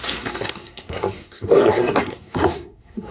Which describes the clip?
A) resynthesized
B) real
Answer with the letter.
A